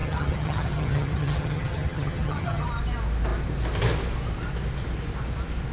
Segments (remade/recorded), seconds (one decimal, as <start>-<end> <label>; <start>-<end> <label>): 0.0-2.7 remade; 2.7-5.7 recorded